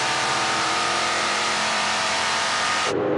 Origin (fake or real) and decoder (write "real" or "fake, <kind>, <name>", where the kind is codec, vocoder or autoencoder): fake, vocoder, BigVGAN v2